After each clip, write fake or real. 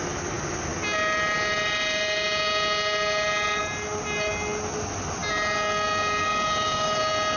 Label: real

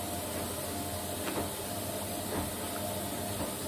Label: real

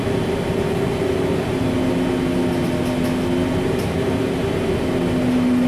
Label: real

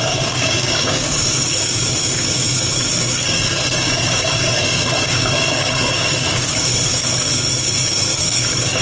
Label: fake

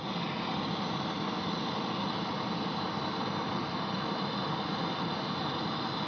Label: real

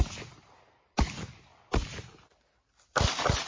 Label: real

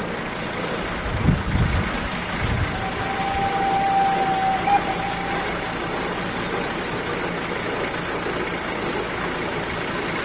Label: real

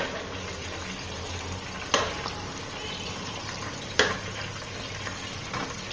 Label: real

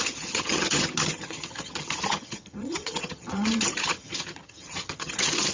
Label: fake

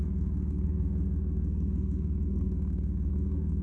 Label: fake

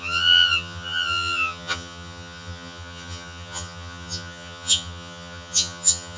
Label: fake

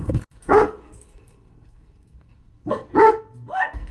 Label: fake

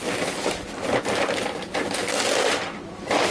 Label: real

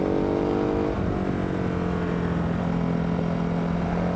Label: real